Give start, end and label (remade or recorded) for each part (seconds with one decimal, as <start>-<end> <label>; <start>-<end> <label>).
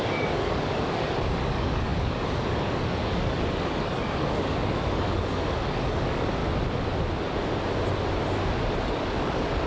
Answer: 0.0-6.4 remade; 6.4-8.8 recorded; 8.8-9.7 remade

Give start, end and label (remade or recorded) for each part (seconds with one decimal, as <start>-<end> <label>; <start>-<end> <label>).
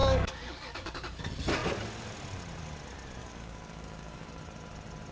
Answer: 0.0-1.2 remade; 1.2-3.2 recorded; 3.2-4.4 remade; 4.4-5.1 recorded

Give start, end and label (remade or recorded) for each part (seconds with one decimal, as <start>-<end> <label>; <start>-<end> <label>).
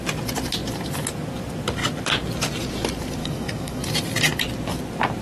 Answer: 0.0-3.2 recorded; 3.2-3.8 remade; 3.8-5.2 recorded